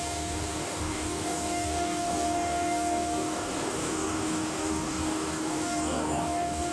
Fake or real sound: fake